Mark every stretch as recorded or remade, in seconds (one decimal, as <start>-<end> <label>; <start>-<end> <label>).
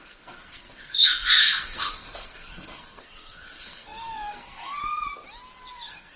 0.0-4.8 remade; 4.8-5.7 recorded; 5.7-6.2 remade